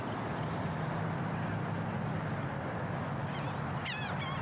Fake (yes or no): no